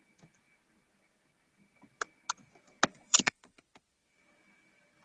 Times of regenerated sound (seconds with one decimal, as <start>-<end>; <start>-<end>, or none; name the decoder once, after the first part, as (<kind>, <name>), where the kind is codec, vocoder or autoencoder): 2.9-3.6 (vocoder, Vocos)